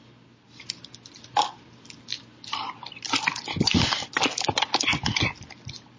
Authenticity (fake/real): real